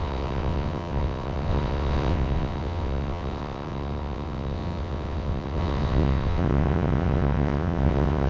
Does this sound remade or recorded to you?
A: remade